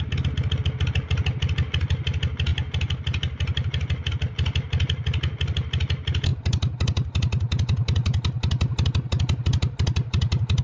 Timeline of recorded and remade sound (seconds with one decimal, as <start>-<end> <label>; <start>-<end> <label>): 0.0-2.5 recorded; 2.5-4.1 remade; 4.1-10.6 recorded